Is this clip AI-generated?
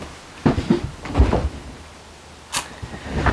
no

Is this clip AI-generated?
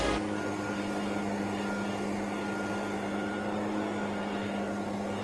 no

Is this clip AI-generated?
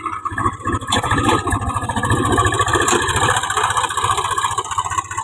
yes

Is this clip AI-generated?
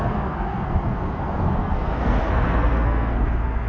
yes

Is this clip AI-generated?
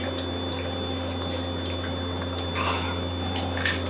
no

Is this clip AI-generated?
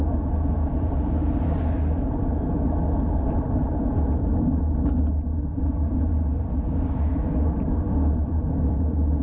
yes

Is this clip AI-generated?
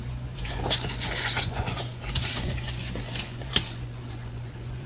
yes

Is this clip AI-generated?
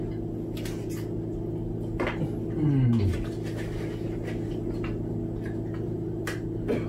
no